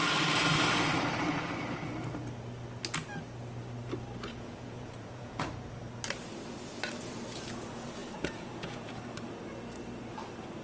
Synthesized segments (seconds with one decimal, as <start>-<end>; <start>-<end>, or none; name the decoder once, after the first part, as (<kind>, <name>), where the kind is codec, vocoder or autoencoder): 4.3-5.4 (vocoder, Vocos); 8.0-8.9